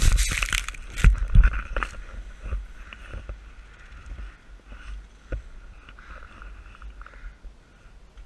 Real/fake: real